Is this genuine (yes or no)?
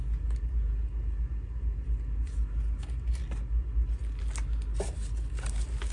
yes